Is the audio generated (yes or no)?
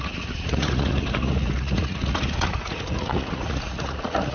yes